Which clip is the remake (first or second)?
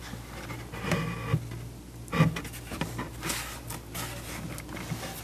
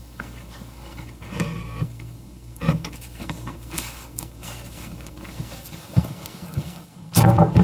second